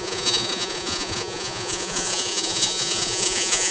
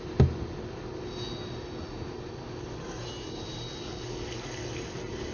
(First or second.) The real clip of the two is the second